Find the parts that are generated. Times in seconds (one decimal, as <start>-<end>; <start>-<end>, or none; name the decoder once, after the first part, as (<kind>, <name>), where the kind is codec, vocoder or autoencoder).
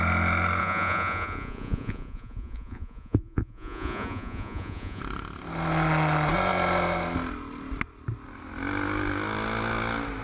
0.6-5.0 (vocoder, Vocos)